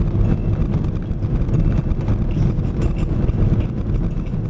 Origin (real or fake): real